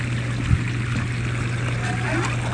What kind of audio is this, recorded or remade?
recorded